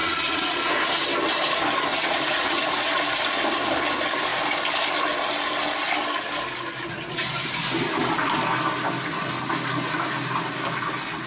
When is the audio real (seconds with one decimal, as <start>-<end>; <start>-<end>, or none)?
0.7-1.9; 2.6-11.3

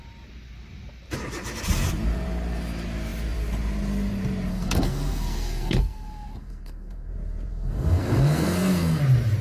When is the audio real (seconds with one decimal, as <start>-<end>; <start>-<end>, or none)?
0.0-4.5; 7.1-7.5; 9.0-9.4

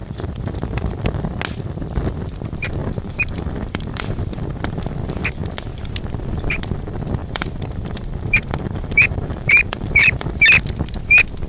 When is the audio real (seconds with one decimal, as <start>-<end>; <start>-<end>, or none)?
1.0-2.8; 4.6-7.2; 10.4-11.5

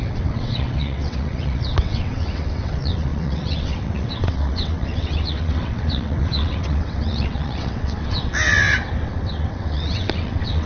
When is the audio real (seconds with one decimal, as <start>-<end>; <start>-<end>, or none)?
8.3-9.0

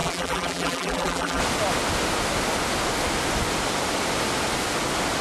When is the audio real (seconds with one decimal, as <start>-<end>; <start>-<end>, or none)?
1.4-5.2